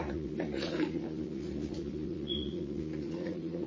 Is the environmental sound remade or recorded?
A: remade